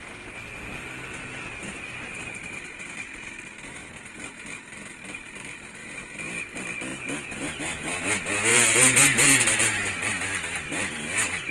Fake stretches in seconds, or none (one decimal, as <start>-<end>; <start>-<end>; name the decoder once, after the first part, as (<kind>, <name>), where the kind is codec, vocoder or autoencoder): 1.6-2.4 (vocoder, BigVGAN v2); 5.8-6.4; 8.5-10.1